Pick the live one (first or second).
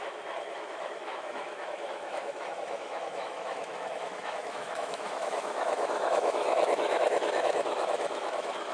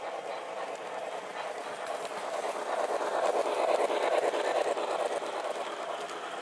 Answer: second